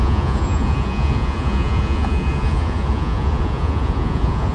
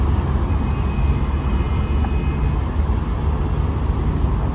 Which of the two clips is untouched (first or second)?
second